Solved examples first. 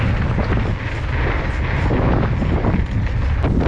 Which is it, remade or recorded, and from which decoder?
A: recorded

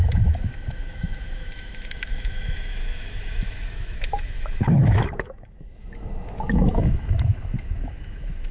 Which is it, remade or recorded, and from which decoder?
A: remade, autoencoder, DAC-VAE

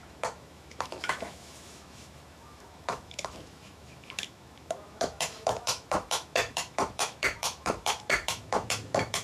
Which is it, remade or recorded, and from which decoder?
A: remade, autoencoder, DAC-VAE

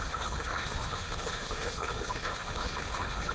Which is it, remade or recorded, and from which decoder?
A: remade, autoencoder, DAC-VAE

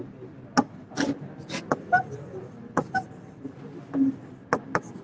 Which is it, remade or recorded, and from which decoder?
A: recorded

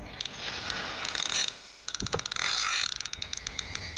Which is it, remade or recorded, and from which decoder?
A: recorded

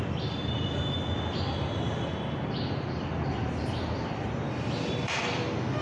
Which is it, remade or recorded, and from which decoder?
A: recorded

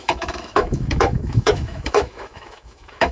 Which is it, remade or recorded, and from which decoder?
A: remade, autoencoder, DAC-VAE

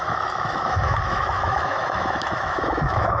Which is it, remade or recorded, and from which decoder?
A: remade, autoencoder, DAC-VAE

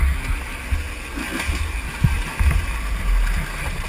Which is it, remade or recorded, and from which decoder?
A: recorded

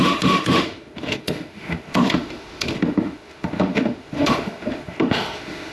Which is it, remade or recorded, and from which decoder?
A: remade, autoencoder, DAC-VAE